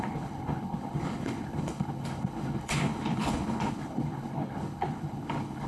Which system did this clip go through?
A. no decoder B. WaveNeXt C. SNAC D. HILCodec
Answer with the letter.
D